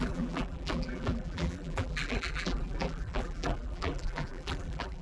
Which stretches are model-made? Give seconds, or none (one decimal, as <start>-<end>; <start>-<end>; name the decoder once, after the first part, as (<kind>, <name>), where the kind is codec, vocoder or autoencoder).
0.0-5.0 (vocoder, BigVGAN v2)